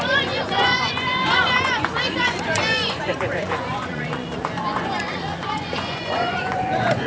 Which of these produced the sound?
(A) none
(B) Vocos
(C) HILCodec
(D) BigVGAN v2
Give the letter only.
B